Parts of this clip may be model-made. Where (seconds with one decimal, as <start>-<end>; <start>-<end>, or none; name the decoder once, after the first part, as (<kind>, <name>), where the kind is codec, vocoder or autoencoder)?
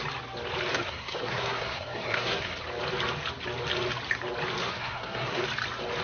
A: 0.7-2.6 (codec, SNAC); 4.6-5.4